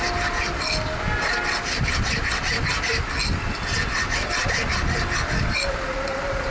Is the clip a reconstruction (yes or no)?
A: no